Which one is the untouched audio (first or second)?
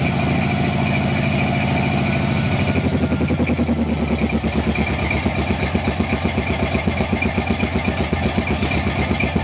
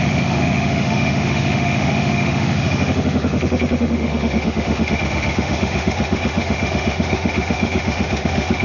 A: first